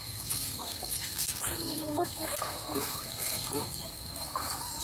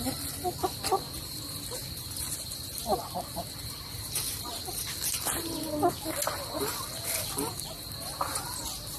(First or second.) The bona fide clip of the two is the second